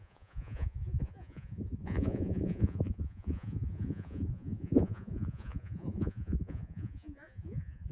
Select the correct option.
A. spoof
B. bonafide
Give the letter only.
A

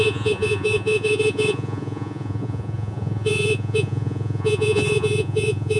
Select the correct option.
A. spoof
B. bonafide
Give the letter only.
A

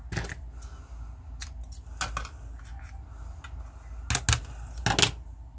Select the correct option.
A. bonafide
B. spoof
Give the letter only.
A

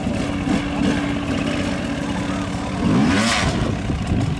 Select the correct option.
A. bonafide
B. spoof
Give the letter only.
A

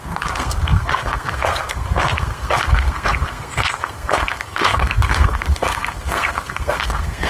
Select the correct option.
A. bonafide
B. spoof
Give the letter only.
B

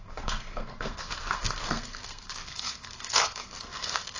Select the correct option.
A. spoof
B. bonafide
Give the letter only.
A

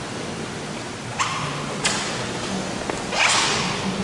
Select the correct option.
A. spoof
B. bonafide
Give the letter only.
B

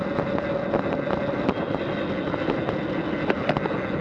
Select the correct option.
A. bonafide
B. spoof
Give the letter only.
A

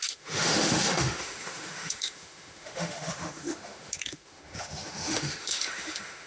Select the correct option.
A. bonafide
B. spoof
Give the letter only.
B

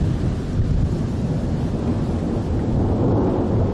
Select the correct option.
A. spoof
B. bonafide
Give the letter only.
B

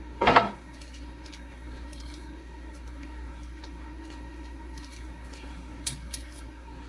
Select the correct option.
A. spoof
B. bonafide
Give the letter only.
A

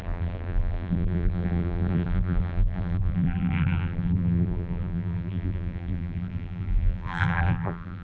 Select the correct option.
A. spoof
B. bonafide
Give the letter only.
A